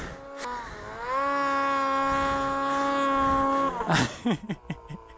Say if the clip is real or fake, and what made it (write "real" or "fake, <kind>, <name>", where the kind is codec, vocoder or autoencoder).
real